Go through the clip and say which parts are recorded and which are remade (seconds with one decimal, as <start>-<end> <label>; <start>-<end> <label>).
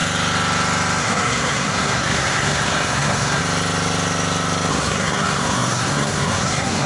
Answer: 0.0-1.0 recorded; 1.0-3.4 remade; 3.4-4.7 recorded; 4.7-6.9 remade